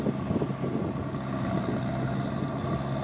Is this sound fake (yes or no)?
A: no